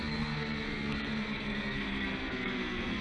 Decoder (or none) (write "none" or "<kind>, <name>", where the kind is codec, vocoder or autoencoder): codec, SNAC